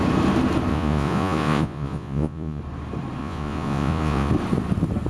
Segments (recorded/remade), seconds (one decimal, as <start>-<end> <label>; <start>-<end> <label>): 0.0-0.7 recorded; 0.7-2.6 remade; 2.6-3.2 recorded; 3.2-4.3 remade; 4.3-5.1 recorded